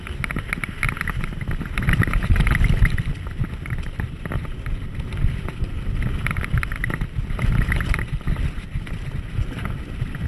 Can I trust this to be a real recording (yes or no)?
yes